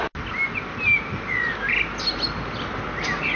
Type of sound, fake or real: real